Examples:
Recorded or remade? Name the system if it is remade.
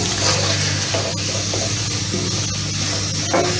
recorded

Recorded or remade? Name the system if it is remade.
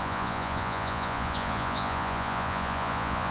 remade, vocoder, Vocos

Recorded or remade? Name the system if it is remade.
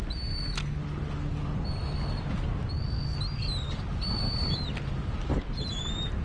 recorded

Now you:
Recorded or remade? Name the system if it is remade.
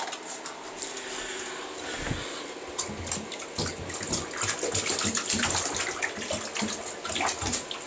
recorded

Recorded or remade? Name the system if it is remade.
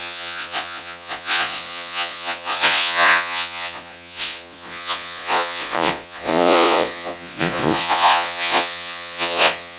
remade, vocoder, Vocos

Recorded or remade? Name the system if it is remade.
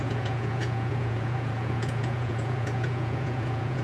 remade, vocoder, Vocos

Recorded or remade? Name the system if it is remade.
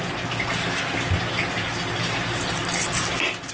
recorded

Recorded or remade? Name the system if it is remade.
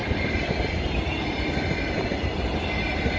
recorded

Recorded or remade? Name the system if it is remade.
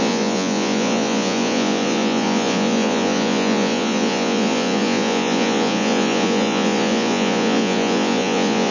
remade, vocoder, Vocos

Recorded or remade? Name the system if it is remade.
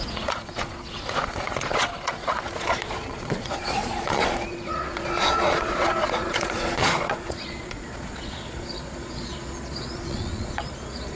remade, vocoder, Vocos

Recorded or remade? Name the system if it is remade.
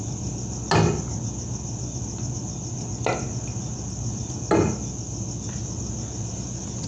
recorded